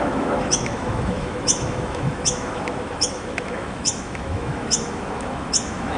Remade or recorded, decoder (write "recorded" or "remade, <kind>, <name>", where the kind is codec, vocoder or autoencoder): remade, autoencoder, DAC-VAE